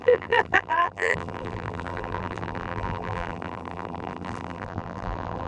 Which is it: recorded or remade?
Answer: remade